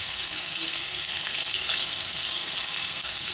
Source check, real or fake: fake